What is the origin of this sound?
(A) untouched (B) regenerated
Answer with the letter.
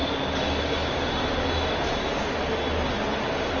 A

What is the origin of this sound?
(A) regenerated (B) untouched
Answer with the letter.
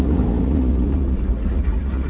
A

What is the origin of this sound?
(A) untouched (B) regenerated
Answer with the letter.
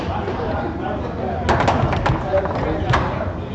A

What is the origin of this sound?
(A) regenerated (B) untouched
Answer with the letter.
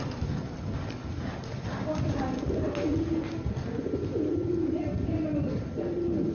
B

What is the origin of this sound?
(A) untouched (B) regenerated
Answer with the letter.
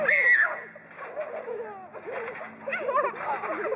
A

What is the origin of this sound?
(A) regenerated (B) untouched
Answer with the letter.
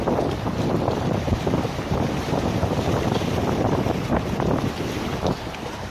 A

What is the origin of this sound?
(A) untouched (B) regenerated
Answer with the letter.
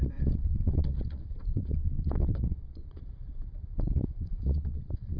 B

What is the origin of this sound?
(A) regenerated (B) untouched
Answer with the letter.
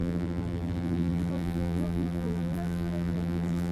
A